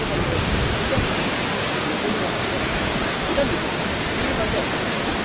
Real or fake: fake